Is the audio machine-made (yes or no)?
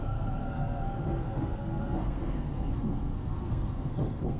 yes